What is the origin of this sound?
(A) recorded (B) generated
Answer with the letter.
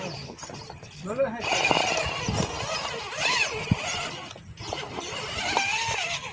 A